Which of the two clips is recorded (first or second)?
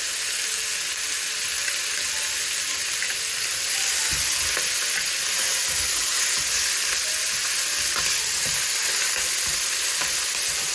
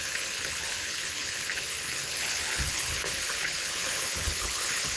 first